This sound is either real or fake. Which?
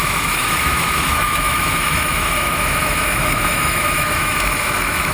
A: fake